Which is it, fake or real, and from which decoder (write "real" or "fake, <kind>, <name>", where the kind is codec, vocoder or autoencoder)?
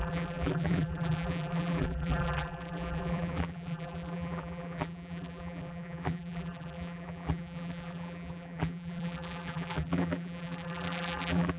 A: fake, vocoder, BigVGAN v2